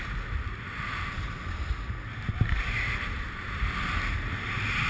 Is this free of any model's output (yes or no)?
yes